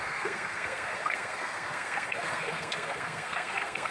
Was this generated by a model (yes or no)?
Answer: yes